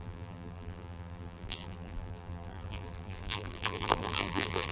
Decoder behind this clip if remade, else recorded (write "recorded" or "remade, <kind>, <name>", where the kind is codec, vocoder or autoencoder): remade, vocoder, BigVGAN v2